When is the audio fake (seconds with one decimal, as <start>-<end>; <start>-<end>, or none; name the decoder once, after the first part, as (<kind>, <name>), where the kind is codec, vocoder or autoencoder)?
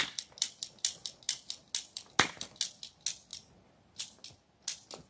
none